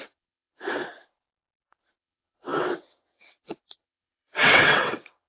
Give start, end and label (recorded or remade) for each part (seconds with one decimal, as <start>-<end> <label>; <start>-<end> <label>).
0.0-0.5 remade; 0.5-2.0 recorded; 2.0-5.3 remade